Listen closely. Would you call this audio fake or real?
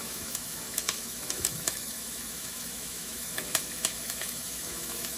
fake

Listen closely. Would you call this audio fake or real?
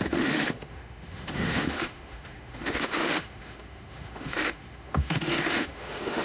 fake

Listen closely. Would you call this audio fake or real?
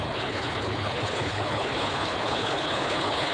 fake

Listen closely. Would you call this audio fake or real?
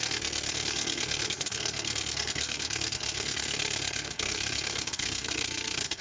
fake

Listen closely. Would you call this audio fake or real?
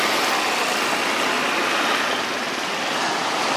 real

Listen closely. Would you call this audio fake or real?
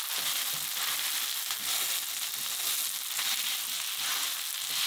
real